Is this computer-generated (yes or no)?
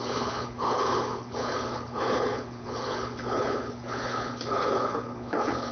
yes